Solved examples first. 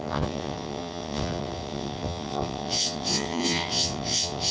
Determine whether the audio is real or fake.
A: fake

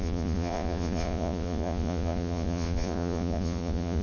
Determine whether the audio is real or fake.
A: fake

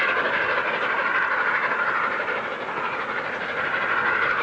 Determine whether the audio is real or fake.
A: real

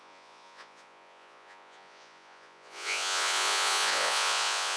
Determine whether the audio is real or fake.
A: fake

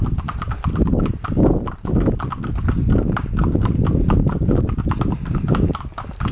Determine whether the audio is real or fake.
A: real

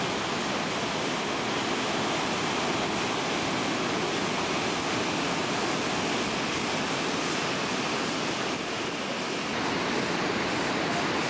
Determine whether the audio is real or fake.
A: real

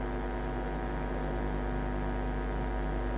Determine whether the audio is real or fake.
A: real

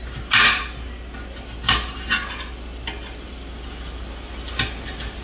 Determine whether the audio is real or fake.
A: real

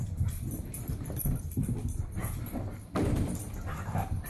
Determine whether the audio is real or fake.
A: fake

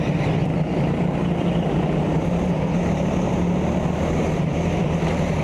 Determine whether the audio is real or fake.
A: real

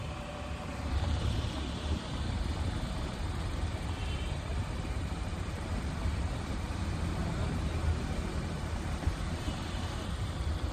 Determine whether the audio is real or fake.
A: fake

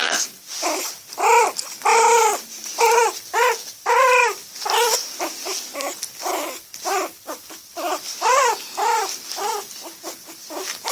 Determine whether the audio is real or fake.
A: real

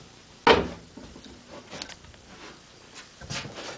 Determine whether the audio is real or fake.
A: real